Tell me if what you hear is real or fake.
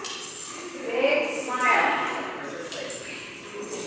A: real